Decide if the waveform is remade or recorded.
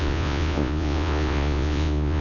remade